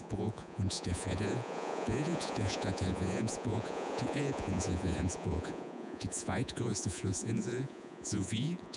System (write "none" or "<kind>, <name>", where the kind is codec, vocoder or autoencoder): vocoder, Vocos